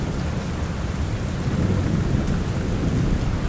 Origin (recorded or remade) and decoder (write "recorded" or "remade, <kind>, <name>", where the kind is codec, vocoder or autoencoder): recorded